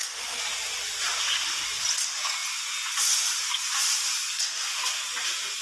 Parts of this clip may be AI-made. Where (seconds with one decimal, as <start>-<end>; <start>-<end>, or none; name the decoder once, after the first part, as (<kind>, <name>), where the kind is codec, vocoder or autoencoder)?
0.0-1.8 (vocoder, BigVGAN v2)